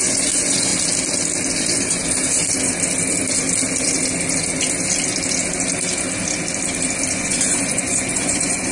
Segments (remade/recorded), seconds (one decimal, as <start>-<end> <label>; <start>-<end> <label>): 0.0-0.7 remade; 0.7-1.6 recorded; 1.6-2.0 remade; 2.0-7.1 recorded; 7.1-8.7 remade